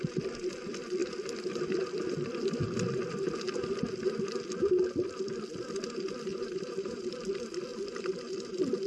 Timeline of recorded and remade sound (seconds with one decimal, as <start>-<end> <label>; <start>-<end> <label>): 0.0-6.3 recorded; 6.3-7.1 remade; 7.1-8.9 recorded